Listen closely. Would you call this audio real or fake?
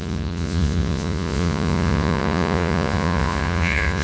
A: fake